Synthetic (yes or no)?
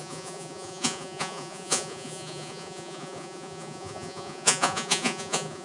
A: yes